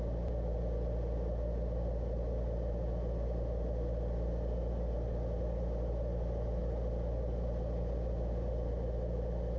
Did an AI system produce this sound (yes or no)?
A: no